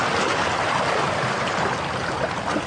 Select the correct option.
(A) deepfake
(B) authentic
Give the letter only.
B